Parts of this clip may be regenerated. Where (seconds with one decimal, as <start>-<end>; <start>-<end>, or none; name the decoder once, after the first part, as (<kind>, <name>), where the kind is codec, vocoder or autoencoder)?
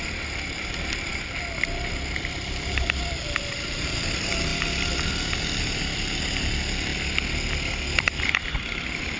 0.0-4.5 (vocoder, BigVGAN v2); 5.4-6.9; 8.0-9.2